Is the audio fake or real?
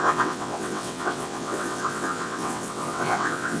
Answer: fake